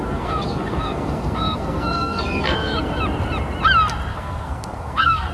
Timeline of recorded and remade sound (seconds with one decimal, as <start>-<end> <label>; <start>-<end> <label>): 0.0-3.0 remade; 3.0-4.1 recorded; 4.1-5.3 remade